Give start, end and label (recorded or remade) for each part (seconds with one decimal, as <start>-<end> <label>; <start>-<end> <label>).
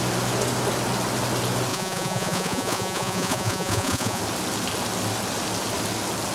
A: 0.0-1.7 recorded; 1.7-4.2 remade; 4.2-6.3 recorded